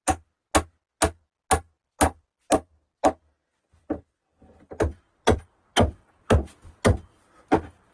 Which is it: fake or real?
real